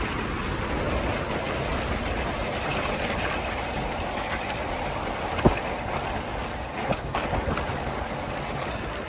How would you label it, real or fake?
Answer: real